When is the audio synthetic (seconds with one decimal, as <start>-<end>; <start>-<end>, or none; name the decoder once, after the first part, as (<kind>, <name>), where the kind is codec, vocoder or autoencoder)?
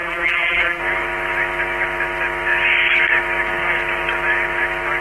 0.0-0.8 (vocoder, BigVGAN v2)